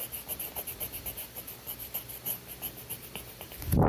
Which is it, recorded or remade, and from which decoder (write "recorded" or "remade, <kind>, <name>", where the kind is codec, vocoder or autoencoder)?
recorded